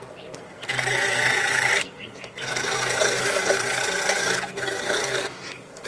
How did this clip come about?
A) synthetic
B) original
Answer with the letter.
A